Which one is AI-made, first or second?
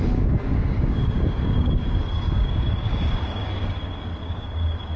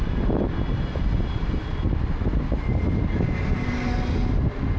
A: first